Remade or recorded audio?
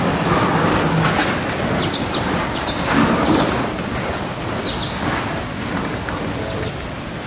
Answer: recorded